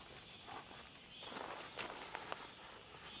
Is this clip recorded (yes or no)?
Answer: yes